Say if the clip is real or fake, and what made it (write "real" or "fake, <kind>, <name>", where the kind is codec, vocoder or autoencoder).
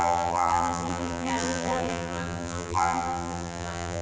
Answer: fake, vocoder, BigVGAN v2